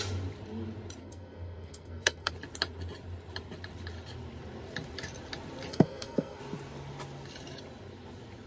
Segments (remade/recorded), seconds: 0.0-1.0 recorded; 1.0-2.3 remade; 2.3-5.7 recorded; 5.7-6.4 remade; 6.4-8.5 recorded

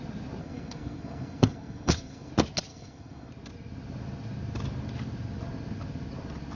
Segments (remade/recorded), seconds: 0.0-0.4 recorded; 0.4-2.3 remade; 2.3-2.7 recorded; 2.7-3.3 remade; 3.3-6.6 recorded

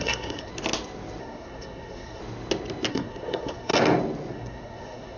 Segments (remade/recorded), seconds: 0.0-0.5 remade; 0.5-1.2 recorded; 1.2-2.2 remade; 2.2-2.9 recorded; 2.9-3.7 remade; 3.7-4.3 recorded; 4.3-5.2 remade

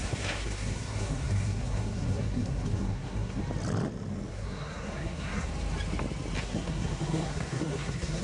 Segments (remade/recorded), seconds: 0.0-3.4 remade; 3.4-4.3 recorded; 4.3-5.5 remade; 5.5-6.4 recorded; 6.4-8.2 remade